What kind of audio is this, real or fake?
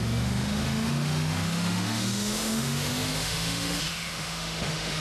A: fake